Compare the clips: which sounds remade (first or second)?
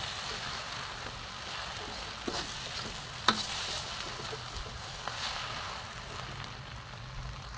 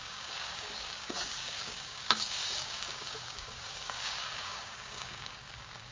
second